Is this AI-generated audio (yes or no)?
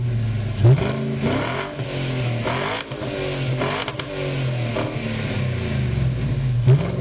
no